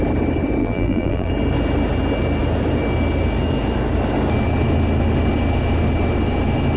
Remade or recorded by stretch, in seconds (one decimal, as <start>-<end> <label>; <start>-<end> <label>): 0.0-0.6 recorded; 0.6-1.3 remade; 1.3-6.8 recorded